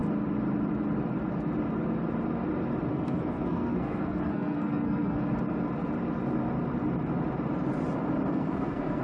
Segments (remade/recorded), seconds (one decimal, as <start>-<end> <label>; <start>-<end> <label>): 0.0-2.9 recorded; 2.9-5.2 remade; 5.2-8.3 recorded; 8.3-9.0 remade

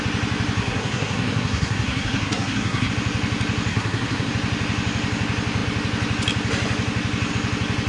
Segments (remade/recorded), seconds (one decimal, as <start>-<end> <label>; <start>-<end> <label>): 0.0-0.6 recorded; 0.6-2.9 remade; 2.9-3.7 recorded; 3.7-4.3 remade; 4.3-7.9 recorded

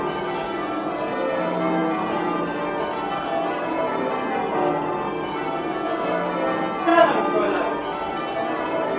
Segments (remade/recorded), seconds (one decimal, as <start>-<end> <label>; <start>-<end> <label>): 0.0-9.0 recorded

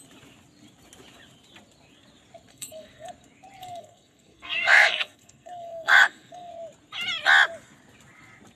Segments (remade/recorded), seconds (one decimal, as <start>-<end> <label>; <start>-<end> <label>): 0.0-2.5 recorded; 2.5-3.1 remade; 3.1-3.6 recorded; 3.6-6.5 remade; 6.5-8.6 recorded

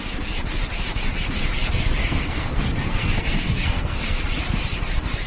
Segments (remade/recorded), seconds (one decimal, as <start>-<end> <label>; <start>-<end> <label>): 0.0-2.0 recorded; 2.0-4.2 remade; 4.2-5.3 recorded

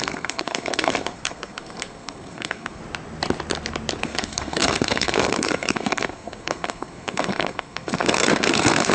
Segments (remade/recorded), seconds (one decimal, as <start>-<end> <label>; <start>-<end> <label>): 0.0-2.8 remade; 2.8-4.0 recorded; 4.0-8.9 remade